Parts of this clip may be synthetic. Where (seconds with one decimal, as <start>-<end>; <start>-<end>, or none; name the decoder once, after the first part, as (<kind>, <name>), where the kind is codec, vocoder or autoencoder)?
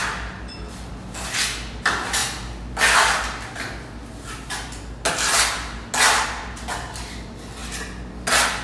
0.0-0.9 (vocoder, BigVGAN v2)